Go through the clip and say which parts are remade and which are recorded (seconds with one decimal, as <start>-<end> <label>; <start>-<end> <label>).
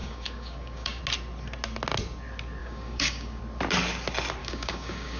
0.0-1.0 remade; 1.0-2.6 recorded; 2.6-3.4 remade; 3.4-4.4 recorded; 4.4-5.2 remade